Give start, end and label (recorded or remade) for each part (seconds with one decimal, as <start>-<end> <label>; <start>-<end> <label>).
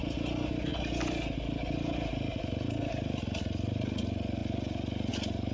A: 0.0-5.5 recorded